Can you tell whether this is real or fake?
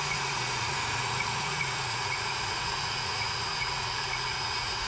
fake